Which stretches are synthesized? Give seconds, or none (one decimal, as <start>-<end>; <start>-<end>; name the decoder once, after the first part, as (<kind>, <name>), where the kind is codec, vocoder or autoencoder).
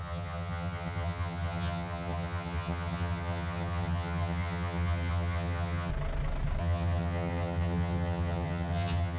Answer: 0.0-5.9 (vocoder, HiFi-GAN); 6.6-9.2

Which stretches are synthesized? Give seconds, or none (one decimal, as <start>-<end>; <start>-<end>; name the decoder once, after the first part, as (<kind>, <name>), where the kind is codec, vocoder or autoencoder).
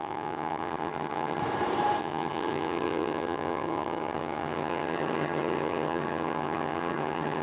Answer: 0.0-1.4 (vocoder, HiFi-GAN); 2.0-7.4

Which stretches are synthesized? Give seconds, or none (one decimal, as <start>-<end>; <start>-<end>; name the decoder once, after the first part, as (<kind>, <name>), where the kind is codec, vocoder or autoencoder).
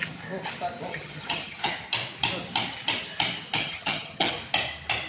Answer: 0.9-1.7 (vocoder, HiFi-GAN); 3.6-4.3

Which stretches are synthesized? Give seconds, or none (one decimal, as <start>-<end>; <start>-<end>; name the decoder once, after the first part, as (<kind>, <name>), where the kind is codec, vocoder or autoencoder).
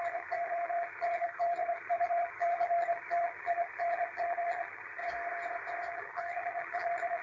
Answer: 0.0-5.0 (vocoder, HiFi-GAN); 5.9-7.2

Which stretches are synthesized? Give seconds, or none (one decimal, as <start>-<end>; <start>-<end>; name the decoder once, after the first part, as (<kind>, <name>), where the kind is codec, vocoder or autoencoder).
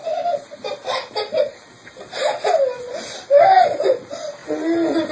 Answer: none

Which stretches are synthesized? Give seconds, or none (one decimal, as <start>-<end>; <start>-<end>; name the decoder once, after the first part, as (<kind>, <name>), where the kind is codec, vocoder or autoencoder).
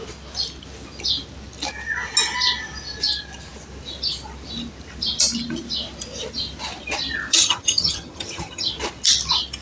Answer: 7.3-8.7 (vocoder, HiFi-GAN)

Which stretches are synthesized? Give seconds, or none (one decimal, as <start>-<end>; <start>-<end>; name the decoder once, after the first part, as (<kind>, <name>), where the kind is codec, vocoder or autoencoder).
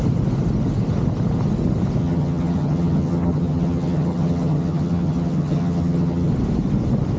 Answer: 2.0-6.3 (vocoder, HiFi-GAN)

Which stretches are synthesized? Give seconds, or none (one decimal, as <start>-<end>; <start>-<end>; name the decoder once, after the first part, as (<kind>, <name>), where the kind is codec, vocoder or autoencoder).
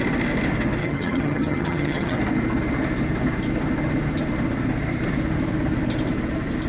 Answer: 0.8-2.2 (vocoder, HiFi-GAN)